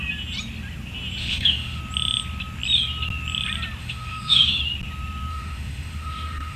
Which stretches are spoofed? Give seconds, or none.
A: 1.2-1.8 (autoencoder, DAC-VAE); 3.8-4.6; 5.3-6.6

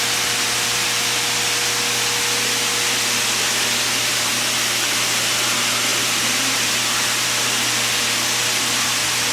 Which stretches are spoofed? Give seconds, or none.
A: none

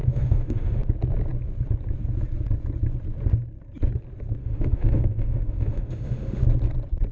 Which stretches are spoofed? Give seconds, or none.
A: 0.0-0.8 (autoencoder, DAC-VAE); 4.4-6.4

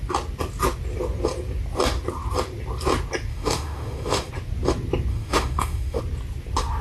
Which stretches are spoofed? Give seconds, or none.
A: 3.3-4.3 (autoencoder, DAC-VAE); 5.1-6.0

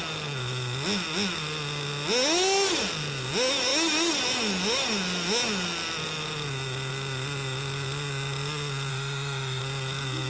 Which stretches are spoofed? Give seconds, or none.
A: 8.9-9.6 (autoencoder, DAC-VAE)

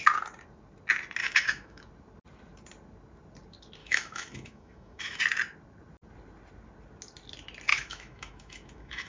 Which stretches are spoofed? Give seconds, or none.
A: 1.2-1.9 (autoencoder, DAC-VAE); 3.8-5.2; 7.7-9.1

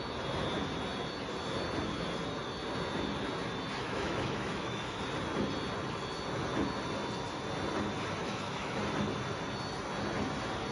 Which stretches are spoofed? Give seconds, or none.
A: 3.8-5.0 (autoencoder, DAC-VAE); 8.2-8.8